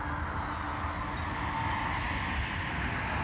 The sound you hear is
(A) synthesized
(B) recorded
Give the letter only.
B